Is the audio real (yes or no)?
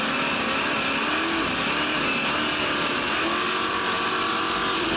yes